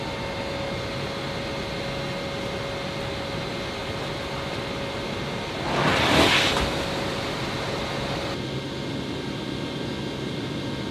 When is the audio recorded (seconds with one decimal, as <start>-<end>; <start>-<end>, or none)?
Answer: 0.0-10.9